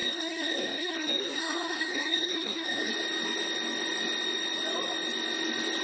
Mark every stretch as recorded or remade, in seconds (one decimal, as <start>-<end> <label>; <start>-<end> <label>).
0.0-2.9 remade; 2.9-5.8 recorded

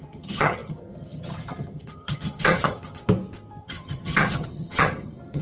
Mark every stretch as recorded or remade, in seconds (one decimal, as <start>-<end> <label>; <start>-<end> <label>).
0.0-3.0 remade; 3.0-3.6 recorded; 3.6-5.4 remade

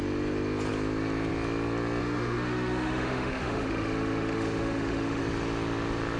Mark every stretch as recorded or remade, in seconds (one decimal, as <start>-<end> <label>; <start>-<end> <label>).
0.0-2.0 recorded; 2.0-5.2 remade; 5.2-6.2 recorded